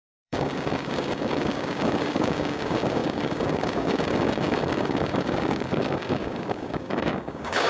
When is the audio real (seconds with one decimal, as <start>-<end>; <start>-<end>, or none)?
none